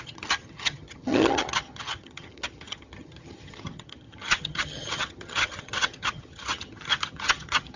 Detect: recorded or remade remade